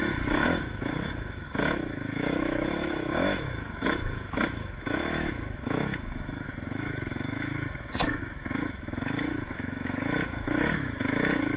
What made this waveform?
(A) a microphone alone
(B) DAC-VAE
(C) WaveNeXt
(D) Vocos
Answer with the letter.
B